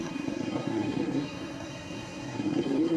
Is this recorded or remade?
remade